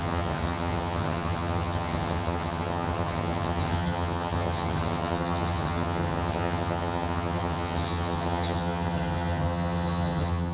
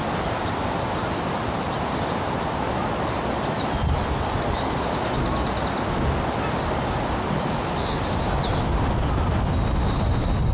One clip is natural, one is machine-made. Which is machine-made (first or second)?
first